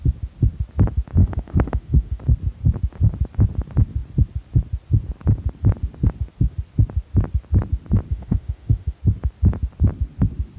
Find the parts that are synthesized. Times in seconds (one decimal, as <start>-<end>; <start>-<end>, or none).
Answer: 1.2-2.2; 8.1-9.0

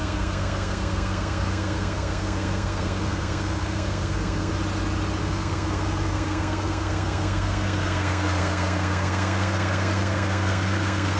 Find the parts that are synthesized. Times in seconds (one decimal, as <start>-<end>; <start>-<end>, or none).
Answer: 0.0-4.5; 5.2-11.2

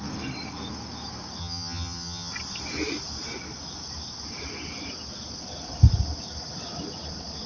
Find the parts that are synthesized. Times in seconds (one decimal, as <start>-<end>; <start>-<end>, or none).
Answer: 1.4-2.3

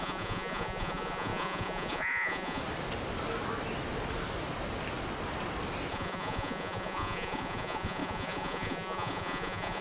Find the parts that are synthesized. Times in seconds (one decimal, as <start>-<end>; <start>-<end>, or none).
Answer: 0.0-2.6; 5.9-9.8

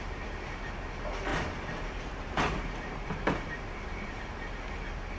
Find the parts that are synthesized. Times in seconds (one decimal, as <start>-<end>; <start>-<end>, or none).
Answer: 1.3-4.4